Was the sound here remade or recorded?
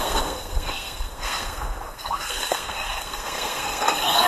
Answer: remade